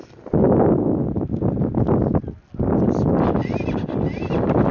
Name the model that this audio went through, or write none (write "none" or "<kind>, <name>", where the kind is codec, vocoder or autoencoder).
none